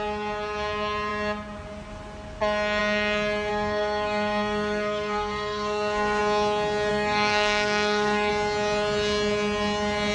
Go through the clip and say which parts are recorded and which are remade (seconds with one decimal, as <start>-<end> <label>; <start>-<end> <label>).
0.0-3.5 recorded; 3.5-6.2 remade; 6.2-6.9 recorded; 6.9-8.3 remade; 8.3-10.1 recorded